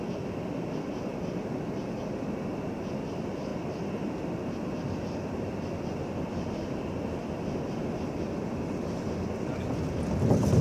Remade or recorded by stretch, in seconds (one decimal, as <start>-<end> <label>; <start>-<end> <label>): 0.0-10.6 recorded

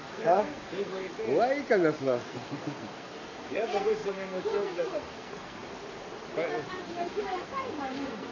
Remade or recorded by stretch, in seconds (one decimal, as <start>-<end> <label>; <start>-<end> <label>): 0.0-1.1 remade; 1.1-2.0 recorded; 2.0-5.6 remade; 5.6-6.8 recorded; 6.8-8.3 remade

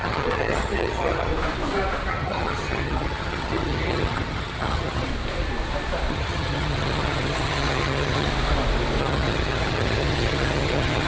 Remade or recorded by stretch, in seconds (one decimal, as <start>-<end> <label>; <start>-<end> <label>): 0.0-1.3 remade; 1.3-2.1 recorded; 2.1-5.1 remade; 5.1-6.1 recorded; 6.1-8.3 remade; 8.3-9.0 recorded; 9.0-11.1 remade

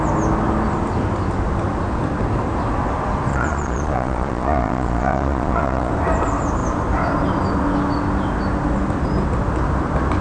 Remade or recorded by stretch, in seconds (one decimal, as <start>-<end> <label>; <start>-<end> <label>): 0.0-3.3 recorded; 3.3-5.9 remade; 5.9-10.2 recorded

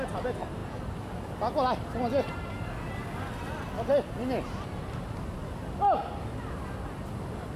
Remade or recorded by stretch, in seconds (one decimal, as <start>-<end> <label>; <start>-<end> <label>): 0.0-7.6 recorded

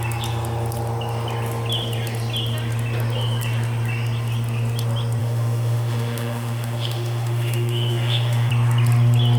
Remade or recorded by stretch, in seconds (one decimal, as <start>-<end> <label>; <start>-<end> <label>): 0.0-5.2 recorded; 5.2-8.5 remade; 8.5-9.4 recorded

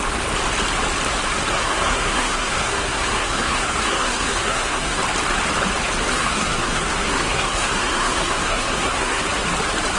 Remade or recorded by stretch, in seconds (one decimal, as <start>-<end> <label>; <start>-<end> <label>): 0.0-1.5 recorded; 1.5-5.0 remade; 5.0-6.1 recorded; 6.1-9.2 remade; 9.2-10.0 recorded

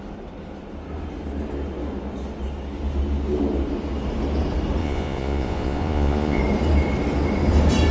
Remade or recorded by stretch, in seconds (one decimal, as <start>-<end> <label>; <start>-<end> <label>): 0.0-4.8 recorded; 4.8-6.4 remade; 6.4-7.9 recorded